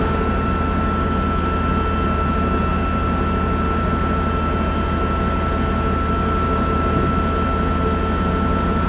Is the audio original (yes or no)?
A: yes